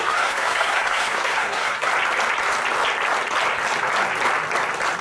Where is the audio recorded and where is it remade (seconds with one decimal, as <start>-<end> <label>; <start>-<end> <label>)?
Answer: 0.0-1.9 remade; 1.9-5.0 recorded